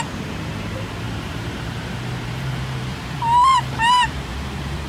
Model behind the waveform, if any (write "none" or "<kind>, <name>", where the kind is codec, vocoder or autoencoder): vocoder, BigVGAN v2